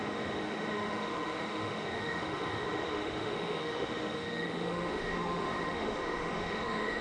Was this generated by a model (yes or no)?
yes